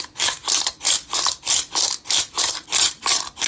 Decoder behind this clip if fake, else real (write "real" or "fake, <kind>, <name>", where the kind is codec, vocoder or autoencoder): fake, vocoder, BigVGAN v2